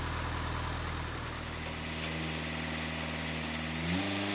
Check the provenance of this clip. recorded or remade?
recorded